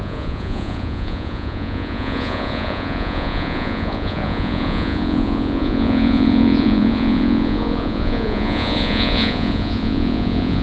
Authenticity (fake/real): fake